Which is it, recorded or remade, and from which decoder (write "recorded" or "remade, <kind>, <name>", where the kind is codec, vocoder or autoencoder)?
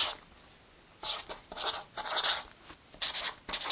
recorded